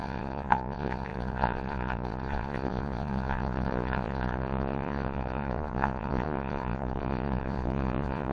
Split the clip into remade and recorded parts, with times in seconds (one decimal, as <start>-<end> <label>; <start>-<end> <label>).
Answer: 0.0-8.3 remade